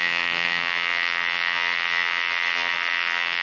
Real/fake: fake